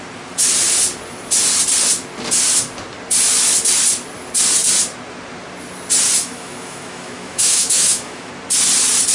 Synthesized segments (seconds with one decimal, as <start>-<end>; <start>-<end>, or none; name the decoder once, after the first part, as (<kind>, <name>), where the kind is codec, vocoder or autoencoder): 6.2-8.3 (autoencoder, DAC-VAE)

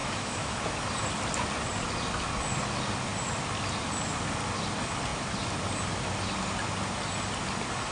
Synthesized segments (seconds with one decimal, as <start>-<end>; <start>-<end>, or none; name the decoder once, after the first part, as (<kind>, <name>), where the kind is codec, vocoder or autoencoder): 0.0-0.6 (autoencoder, DAC-VAE)

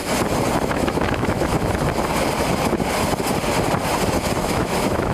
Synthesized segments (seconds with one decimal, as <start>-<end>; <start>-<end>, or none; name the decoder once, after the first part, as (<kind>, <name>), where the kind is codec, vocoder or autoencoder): 0.7-1.5 (autoencoder, DAC-VAE); 4.4-5.1

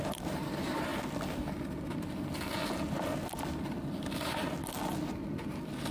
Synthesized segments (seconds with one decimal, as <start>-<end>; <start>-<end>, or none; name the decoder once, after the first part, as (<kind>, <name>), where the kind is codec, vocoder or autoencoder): none

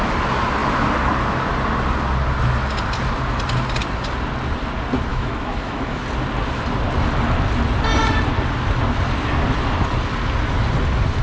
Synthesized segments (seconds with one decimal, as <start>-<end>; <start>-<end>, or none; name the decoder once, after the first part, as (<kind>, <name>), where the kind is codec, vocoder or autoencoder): 5.1-6.0 (autoencoder, DAC-VAE)

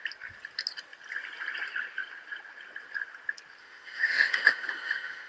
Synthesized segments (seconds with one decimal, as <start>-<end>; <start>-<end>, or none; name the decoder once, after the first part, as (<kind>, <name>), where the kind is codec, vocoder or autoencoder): 3.6-5.3 (autoencoder, DAC-VAE)